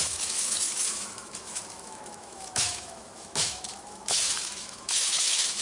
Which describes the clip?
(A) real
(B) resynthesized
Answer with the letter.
B